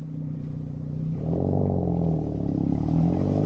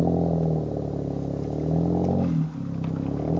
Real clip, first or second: second